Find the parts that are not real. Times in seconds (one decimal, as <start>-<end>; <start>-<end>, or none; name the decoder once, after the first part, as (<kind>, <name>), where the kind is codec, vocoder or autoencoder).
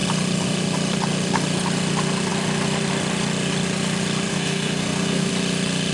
4.3-5.3 (codec, SNAC)